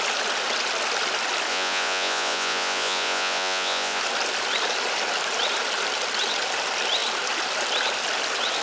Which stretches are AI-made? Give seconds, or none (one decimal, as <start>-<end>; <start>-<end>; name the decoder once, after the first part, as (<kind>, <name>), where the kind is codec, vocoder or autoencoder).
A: 1.5-4.0 (vocoder, Vocos)